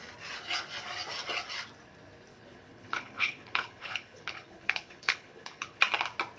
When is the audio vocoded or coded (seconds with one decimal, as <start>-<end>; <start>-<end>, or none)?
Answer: 2.3-5.8